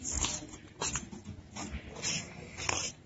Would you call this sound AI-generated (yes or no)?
no